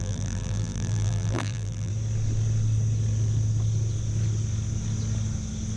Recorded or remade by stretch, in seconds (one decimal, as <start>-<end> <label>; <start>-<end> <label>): 0.0-1.9 remade; 1.9-5.8 recorded